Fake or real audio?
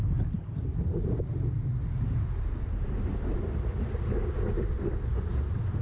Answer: real